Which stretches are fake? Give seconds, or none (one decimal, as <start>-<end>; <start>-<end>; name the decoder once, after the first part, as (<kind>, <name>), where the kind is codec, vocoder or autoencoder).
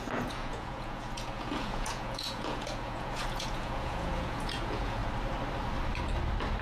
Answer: 0.0-5.0 (vocoder, Vocos)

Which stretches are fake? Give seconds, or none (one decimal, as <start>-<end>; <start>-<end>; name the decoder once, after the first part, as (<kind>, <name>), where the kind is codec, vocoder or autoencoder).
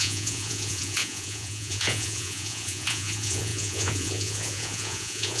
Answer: 0.0-5.4 (vocoder, Vocos)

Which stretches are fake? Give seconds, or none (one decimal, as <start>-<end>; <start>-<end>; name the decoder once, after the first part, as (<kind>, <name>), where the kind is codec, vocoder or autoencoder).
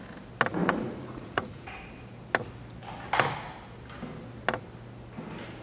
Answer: 0.6-1.8 (vocoder, Vocos)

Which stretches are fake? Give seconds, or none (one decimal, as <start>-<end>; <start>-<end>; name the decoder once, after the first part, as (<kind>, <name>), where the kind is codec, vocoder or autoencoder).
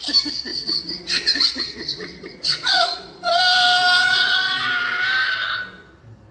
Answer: 0.5-3.4 (vocoder, Vocos); 4.0-4.6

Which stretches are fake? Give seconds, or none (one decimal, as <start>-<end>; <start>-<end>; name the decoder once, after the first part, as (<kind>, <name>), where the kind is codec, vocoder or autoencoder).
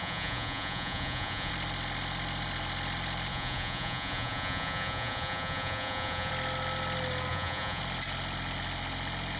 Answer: 0.0-1.5 (vocoder, Vocos); 3.3-6.3; 7.3-7.8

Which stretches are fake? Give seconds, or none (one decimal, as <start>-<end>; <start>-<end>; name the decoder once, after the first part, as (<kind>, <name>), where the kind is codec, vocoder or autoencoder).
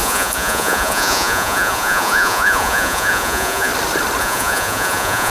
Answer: 0.0-3.7 (vocoder, Vocos); 4.2-5.3